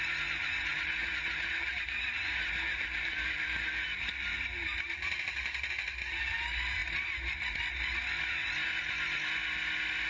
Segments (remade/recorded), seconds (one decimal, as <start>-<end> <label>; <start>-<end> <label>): 0.0-1.0 recorded; 1.0-4.7 remade; 4.7-10.1 recorded

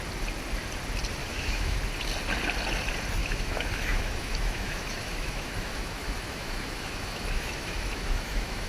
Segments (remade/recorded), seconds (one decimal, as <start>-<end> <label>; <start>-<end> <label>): 0.0-1.2 recorded; 1.2-1.8 remade; 1.8-3.2 recorded; 3.2-8.7 remade

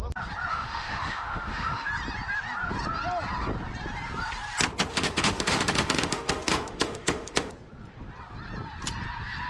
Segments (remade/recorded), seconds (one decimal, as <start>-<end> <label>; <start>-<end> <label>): 0.0-0.5 recorded; 0.5-1.9 remade; 1.9-4.9 recorded; 4.9-7.5 remade; 7.5-9.5 recorded